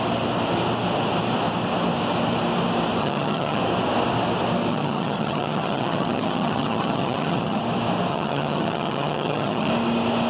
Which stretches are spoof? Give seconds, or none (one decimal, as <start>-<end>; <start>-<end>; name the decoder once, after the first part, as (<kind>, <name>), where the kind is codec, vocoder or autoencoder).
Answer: 3.0-3.6 (vocoder, HiFi-GAN); 4.7-7.6; 8.1-9.7

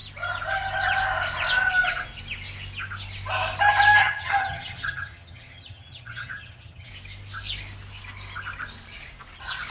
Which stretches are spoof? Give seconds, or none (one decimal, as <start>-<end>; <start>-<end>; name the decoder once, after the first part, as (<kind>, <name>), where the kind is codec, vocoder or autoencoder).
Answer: 4.0-6.9 (vocoder, HiFi-GAN)

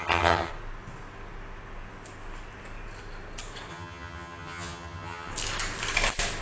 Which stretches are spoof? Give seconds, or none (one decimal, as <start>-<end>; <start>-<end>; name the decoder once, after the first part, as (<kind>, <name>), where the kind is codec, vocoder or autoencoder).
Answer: 0.0-0.5 (vocoder, HiFi-GAN); 3.7-5.3

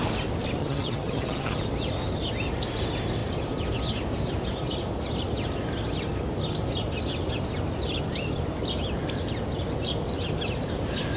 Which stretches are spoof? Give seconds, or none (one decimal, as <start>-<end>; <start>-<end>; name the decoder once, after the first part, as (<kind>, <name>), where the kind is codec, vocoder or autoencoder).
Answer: 0.6-1.6 (vocoder, HiFi-GAN)

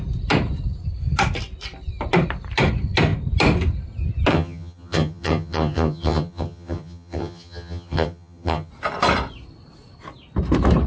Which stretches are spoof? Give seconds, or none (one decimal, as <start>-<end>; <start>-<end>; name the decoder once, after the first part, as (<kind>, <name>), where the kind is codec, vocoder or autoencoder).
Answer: 4.3-8.7 (vocoder, HiFi-GAN)

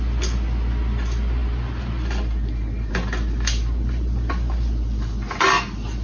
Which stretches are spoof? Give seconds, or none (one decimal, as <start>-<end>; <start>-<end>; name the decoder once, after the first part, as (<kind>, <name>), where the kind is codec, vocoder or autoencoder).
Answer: none

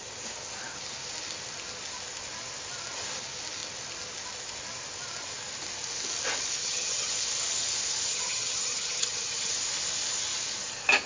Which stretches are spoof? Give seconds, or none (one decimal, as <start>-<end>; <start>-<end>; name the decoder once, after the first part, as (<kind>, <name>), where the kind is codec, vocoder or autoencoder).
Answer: 6.6-7.1 (vocoder, HiFi-GAN); 8.1-9.5

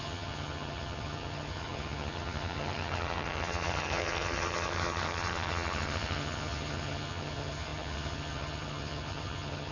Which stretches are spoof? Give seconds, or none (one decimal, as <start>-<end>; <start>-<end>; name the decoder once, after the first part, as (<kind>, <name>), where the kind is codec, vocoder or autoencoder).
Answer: 0.0-9.7 (vocoder, HiFi-GAN)